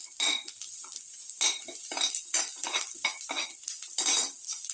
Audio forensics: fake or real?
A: real